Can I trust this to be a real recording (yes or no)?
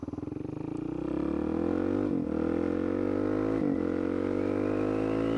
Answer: yes